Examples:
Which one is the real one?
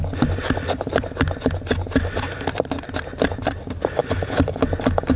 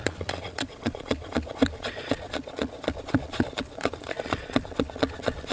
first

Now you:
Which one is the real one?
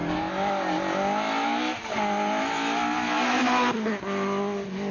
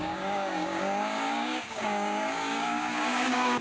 first